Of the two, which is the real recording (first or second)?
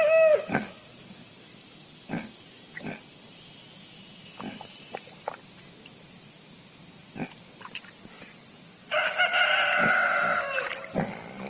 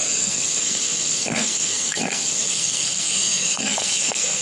first